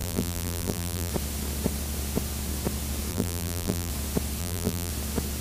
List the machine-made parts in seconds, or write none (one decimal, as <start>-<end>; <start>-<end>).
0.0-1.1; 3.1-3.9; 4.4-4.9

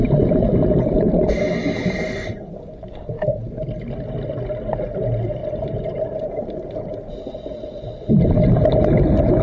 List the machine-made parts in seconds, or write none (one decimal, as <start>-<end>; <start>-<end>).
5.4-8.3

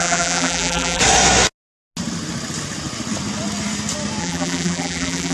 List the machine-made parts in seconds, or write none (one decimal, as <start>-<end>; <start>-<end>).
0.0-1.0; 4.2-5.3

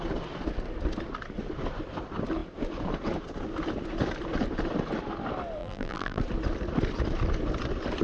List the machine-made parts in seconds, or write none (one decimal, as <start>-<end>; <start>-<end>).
5.6-6.2

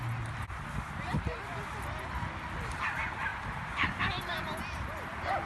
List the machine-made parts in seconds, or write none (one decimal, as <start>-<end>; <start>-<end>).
3.3-4.0